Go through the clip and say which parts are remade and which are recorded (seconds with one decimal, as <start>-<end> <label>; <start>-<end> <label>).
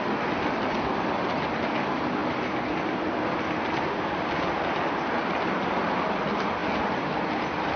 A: 0.0-7.8 recorded